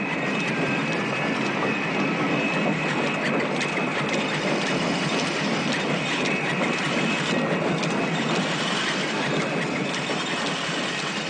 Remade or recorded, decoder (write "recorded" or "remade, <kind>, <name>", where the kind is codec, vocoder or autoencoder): recorded